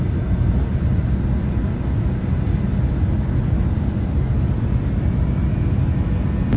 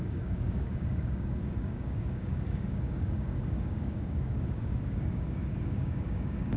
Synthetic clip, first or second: second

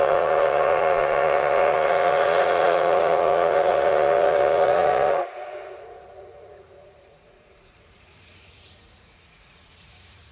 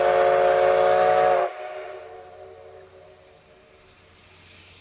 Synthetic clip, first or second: first